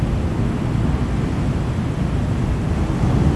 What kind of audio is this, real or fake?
real